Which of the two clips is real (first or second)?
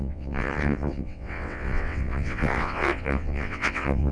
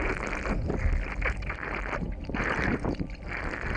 second